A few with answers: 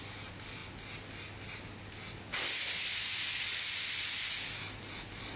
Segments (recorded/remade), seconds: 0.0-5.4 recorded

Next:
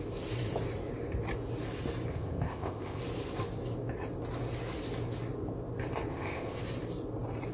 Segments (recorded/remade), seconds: 0.0-2.1 recorded; 2.1-3.0 remade; 3.0-6.1 recorded; 6.1-6.6 remade; 6.6-7.5 recorded

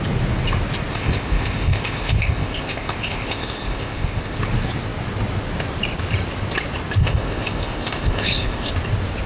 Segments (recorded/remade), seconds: 0.0-0.9 recorded; 0.9-4.4 remade; 4.4-7.0 recorded; 7.0-8.7 remade; 8.7-9.3 recorded

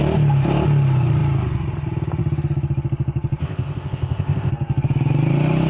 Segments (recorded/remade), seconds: 0.0-3.4 recorded; 3.4-4.5 remade; 4.5-5.7 recorded

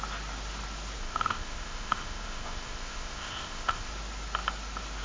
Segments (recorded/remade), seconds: 0.0-1.0 recorded; 1.0-3.9 remade; 3.9-5.0 recorded